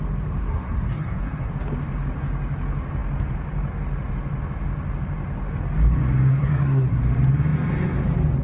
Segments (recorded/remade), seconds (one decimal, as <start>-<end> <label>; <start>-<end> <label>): 0.0-0.4 recorded; 0.4-1.5 remade; 1.5-6.3 recorded; 6.3-7.0 remade; 7.0-8.4 recorded